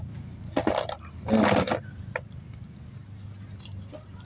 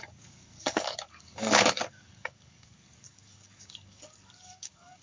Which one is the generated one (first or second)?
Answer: second